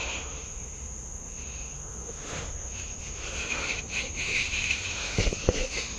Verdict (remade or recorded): remade